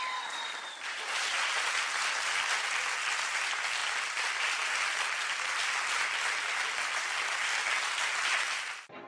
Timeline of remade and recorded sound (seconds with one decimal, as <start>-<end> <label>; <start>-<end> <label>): 0.0-9.1 recorded